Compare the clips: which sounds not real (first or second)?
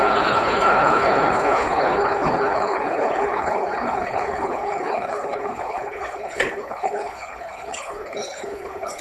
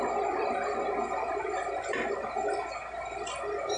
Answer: first